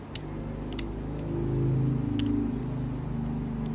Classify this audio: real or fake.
real